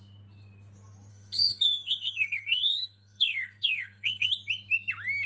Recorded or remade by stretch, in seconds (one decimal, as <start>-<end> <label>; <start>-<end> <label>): 0.0-1.1 recorded; 1.1-4.3 remade; 4.3-5.3 recorded